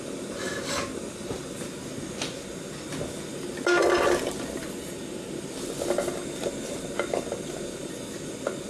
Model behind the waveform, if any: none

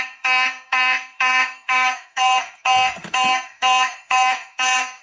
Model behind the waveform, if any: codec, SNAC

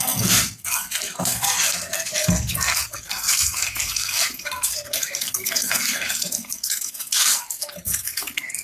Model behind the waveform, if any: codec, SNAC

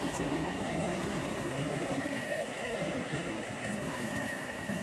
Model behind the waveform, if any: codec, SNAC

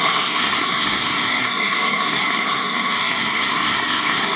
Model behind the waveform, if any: codec, SNAC